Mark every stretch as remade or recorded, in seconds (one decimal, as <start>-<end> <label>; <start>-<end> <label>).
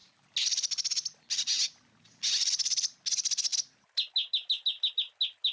0.0-5.5 recorded